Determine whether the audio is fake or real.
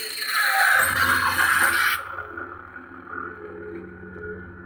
real